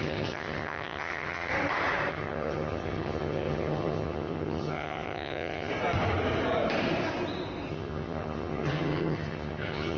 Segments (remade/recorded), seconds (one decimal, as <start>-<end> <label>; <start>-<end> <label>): 0.0-1.5 remade; 1.5-2.1 recorded; 2.1-5.7 remade; 5.7-7.7 recorded; 7.7-10.0 remade